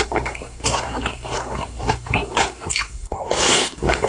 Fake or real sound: fake